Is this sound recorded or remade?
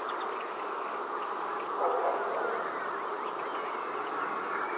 recorded